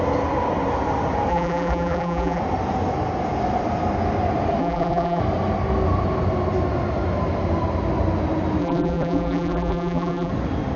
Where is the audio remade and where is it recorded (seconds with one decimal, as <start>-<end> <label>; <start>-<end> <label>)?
0.0-1.3 recorded; 1.3-2.4 remade; 2.4-4.6 recorded; 4.6-5.2 remade; 5.2-8.6 recorded; 8.6-10.3 remade; 10.3-10.8 recorded